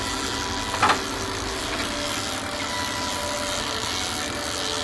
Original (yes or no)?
yes